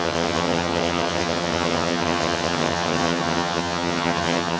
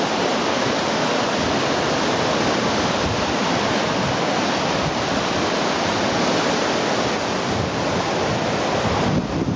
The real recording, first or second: second